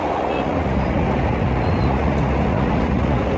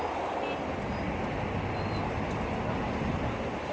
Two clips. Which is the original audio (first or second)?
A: second